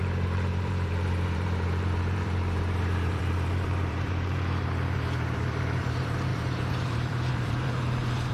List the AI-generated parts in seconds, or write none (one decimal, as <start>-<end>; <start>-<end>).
0.0-8.3